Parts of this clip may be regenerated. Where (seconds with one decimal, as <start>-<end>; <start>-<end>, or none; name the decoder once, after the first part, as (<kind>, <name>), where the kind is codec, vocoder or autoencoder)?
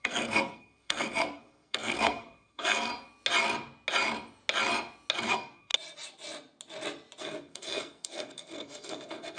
0.0-2.9 (codec, SNAC); 5.3-5.7; 7.2-9.4